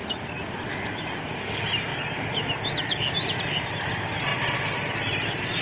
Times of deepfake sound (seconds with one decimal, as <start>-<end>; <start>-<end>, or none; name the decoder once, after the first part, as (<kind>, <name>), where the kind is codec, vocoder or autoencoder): none